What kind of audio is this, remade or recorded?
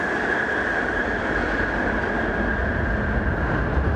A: recorded